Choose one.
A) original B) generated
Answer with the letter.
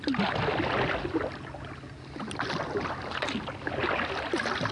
A